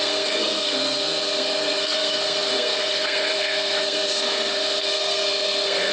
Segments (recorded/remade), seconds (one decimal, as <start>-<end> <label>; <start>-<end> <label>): 0.0-5.9 remade